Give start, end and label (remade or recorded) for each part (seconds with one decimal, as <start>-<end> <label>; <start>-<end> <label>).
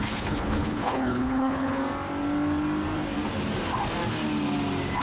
0.0-1.8 remade; 1.8-5.0 recorded